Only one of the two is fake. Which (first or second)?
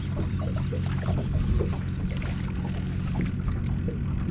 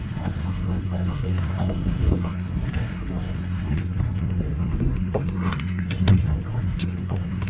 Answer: second